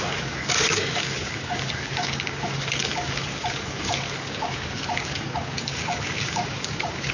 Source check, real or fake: fake